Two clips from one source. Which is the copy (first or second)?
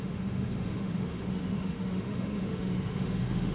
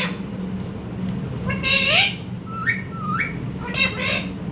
first